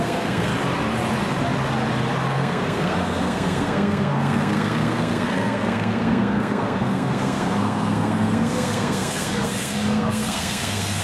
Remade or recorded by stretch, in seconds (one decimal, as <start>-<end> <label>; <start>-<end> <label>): 0.0-0.5 remade; 0.5-2.3 recorded; 2.3-11.0 remade